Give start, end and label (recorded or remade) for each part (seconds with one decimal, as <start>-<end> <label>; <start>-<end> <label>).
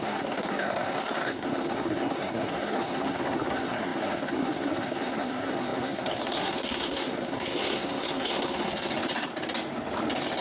0.0-8.9 remade; 8.9-10.4 recorded